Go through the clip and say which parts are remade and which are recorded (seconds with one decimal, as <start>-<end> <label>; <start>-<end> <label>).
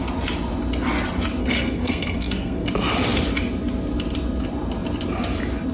0.0-1.4 recorded; 1.4-2.7 remade; 2.7-5.7 recorded